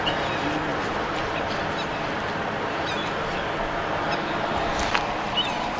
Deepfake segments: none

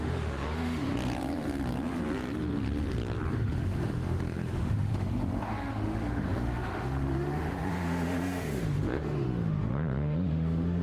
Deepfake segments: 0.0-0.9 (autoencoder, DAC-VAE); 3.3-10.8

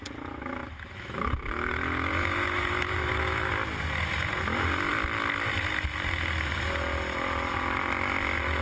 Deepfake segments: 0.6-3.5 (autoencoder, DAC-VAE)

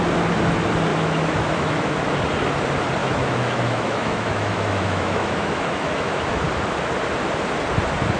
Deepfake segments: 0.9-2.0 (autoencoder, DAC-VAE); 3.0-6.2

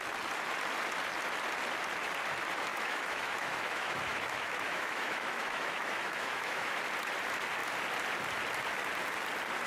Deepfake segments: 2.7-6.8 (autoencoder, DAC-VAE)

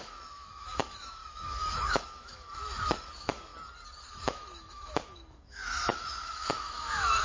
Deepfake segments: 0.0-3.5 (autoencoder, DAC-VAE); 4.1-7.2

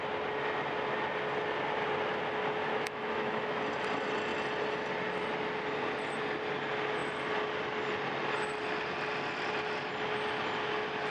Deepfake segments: 2.7-3.6 (autoencoder, DAC-VAE)